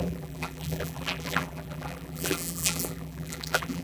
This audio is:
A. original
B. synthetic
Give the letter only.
B